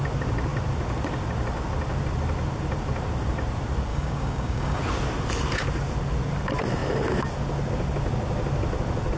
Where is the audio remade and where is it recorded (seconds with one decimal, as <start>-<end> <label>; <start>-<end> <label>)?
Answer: 0.0-3.9 recorded; 3.9-4.8 remade; 4.8-9.2 recorded